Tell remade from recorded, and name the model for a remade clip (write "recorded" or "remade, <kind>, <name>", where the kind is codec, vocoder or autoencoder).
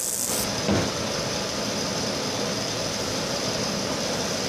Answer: remade, vocoder, BigVGAN v2